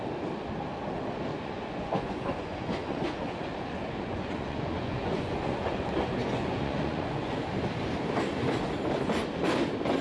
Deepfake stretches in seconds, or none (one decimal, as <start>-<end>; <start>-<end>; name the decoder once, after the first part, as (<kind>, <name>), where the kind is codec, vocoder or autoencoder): 1.3-5.8 (vocoder, Vocos); 6.2-7.4